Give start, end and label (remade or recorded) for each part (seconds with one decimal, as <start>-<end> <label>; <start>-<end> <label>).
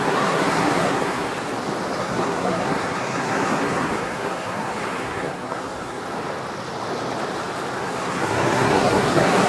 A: 0.0-1.3 remade; 1.3-2.0 recorded; 2.0-6.0 remade; 6.0-7.8 recorded; 7.8-9.5 remade